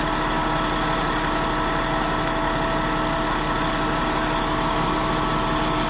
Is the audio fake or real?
real